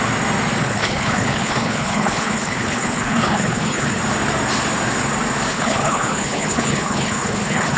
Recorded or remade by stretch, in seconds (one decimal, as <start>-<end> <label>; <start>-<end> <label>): 0.0-0.6 recorded; 0.6-4.0 remade; 4.0-5.5 recorded; 5.5-7.8 remade